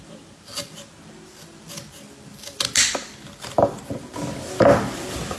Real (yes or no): yes